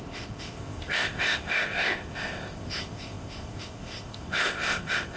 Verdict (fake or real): fake